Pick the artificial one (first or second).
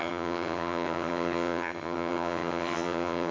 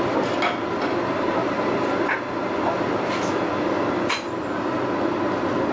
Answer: first